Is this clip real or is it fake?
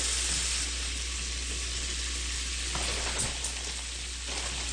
real